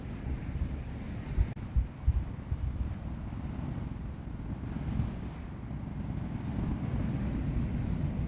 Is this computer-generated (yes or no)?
no